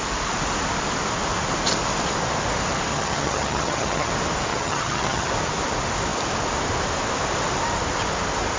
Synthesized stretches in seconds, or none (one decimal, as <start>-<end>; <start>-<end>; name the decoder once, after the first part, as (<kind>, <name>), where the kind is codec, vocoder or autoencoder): 2.9-4.1 (vocoder, HiFi-GAN); 4.5-5.3